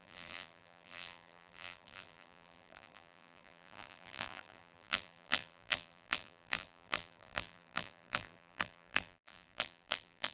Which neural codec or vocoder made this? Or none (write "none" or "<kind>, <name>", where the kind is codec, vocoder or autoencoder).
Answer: vocoder, BigVGAN v2